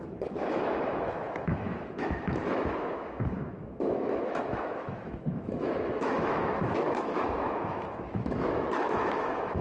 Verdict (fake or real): fake